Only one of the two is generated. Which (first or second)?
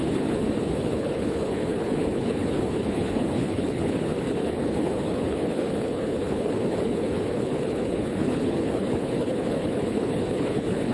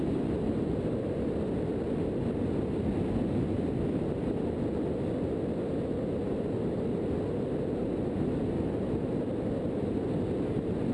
first